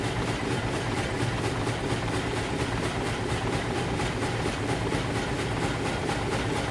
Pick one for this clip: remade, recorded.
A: remade